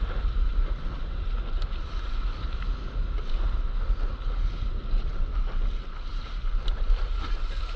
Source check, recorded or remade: recorded